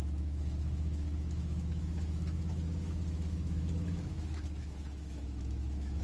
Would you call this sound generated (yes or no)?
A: yes